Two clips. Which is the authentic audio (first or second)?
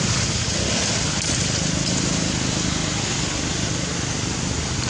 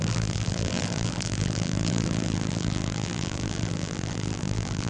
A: first